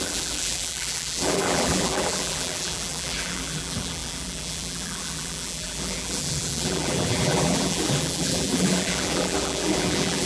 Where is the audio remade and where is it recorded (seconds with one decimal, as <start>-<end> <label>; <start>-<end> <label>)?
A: 0.0-10.3 remade